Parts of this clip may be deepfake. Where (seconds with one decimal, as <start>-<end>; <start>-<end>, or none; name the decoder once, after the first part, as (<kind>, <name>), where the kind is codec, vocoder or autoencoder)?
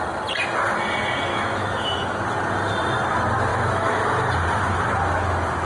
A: 1.3-2.2 (autoencoder, DAC-VAE); 3.5-4.1